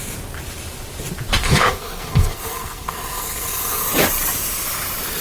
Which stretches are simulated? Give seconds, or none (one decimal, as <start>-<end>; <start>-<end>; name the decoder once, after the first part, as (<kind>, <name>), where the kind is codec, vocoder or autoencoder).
1.4-3.8 (codec, SNAC)